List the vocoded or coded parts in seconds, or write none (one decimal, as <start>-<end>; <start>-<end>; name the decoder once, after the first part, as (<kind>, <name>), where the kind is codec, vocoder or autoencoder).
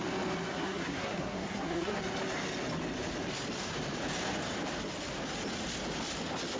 0.5-2.0 (codec, SNAC)